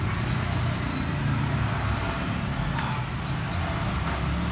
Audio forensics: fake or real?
real